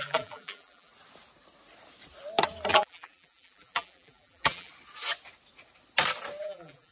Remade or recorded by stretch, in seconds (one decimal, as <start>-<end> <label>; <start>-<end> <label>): 0.0-0.9 remade; 0.9-2.7 recorded; 2.7-4.7 remade; 4.7-6.4 recorded; 6.4-6.9 remade